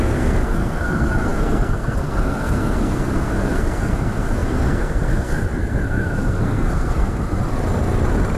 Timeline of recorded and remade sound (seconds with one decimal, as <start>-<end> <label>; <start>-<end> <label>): 0.0-7.4 remade; 7.4-8.4 recorded